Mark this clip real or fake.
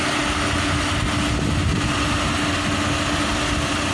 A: real